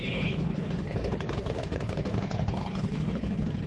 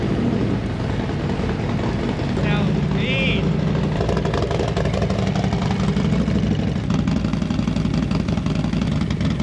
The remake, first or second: first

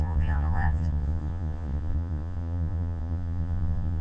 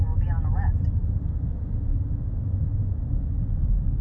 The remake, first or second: first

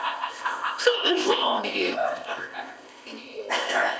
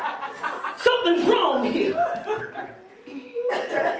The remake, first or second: first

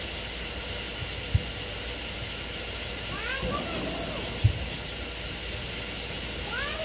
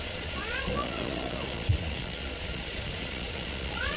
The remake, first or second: second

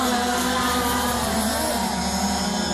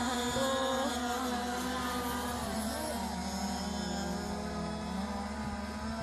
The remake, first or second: first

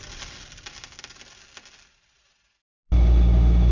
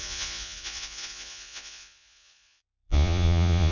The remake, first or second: second